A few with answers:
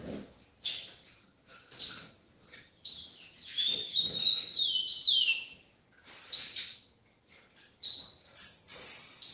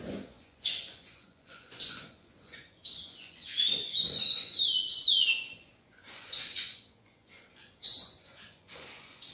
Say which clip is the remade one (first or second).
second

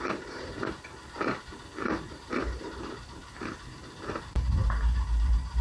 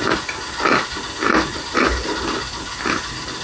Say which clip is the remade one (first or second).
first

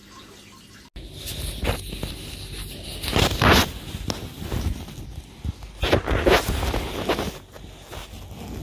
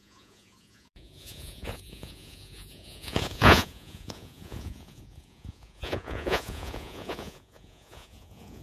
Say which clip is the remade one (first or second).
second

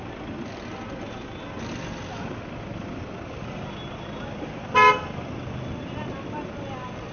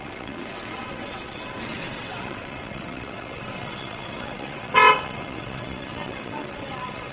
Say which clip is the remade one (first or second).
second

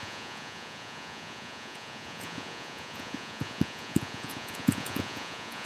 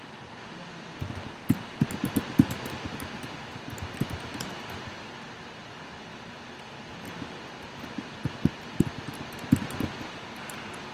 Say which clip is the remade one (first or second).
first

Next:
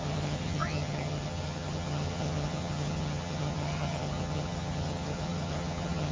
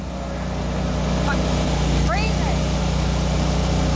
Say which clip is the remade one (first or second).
first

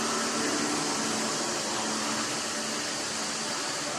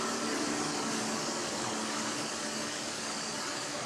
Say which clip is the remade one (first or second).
second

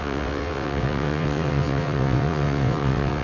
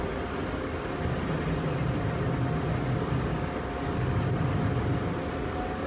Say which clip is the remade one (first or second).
first